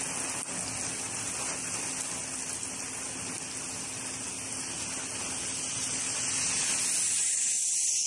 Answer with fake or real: real